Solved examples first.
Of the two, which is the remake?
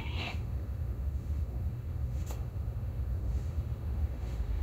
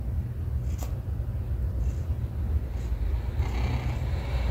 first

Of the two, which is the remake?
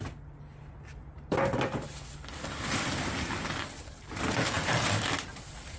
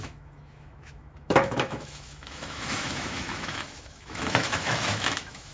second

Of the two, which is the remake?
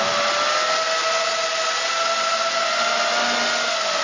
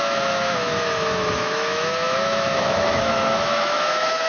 second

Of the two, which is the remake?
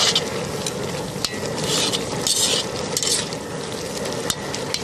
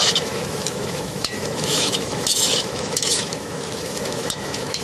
second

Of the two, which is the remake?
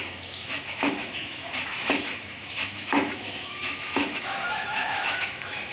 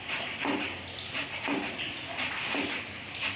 first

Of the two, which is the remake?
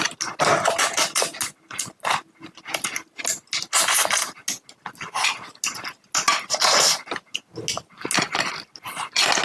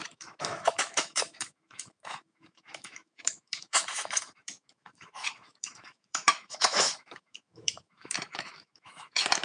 second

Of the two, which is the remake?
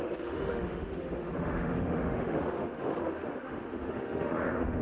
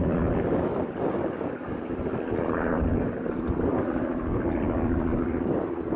first